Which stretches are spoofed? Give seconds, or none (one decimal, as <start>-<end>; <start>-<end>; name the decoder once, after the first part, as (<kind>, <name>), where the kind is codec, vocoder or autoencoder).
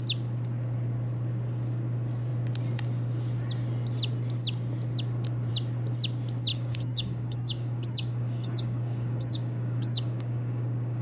6.5-11.0 (codec, DAC)